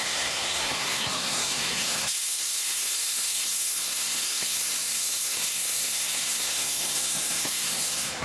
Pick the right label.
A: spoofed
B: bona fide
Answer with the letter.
A